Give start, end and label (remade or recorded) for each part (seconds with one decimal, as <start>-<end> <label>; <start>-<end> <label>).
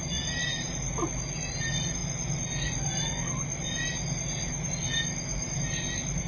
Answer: 0.0-6.3 recorded